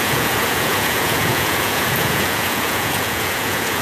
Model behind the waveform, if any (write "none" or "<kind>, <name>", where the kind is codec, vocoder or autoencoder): vocoder, Vocos